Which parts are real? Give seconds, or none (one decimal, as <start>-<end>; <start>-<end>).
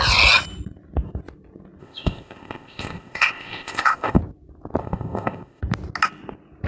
0.0-1.8; 4.2-4.8; 5.6-6.7